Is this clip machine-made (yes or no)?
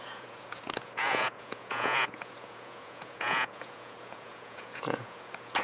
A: yes